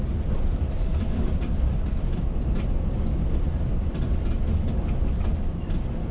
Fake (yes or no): no